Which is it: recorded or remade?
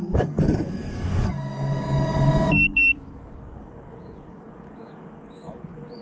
remade